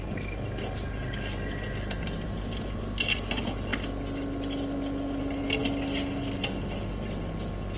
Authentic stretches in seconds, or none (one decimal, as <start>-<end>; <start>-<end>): 0.0-7.8